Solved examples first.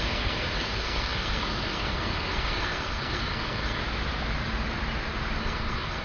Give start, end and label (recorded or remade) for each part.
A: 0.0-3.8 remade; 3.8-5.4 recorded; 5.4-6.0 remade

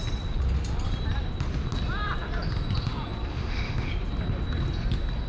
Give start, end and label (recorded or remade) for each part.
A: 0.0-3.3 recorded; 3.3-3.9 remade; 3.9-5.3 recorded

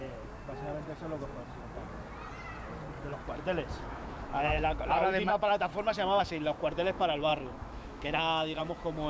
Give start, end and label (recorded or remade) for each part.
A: 0.0-3.9 recorded; 3.9-5.7 remade; 5.7-6.2 recorded; 6.2-9.1 remade

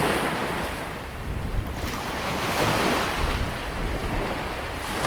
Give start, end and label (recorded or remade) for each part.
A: 0.0-5.1 recorded